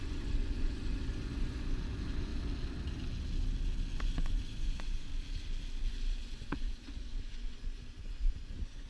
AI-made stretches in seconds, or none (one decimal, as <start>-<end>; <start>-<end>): 0.0-2.3; 4.0-5.1; 6.2-8.9